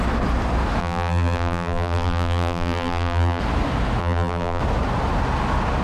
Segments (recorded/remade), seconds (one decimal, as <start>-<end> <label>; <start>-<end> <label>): 0.0-0.8 recorded; 0.8-3.4 remade; 3.4-4.0 recorded; 4.0-4.6 remade; 4.6-5.8 recorded